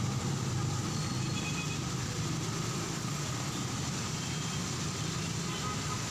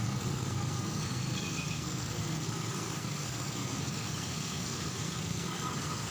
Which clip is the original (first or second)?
first